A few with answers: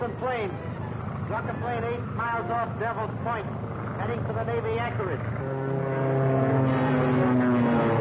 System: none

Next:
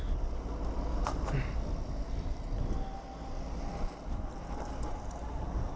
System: none